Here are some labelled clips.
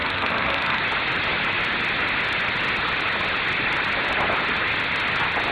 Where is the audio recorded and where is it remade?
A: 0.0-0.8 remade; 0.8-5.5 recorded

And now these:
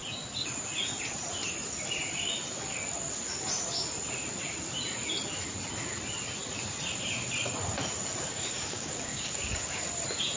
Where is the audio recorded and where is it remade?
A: 0.0-8.3 recorded; 8.3-9.8 remade; 9.8-10.4 recorded

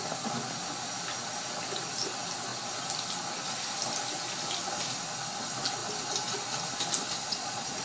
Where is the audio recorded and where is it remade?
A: 0.0-7.2 recorded; 7.2-7.8 remade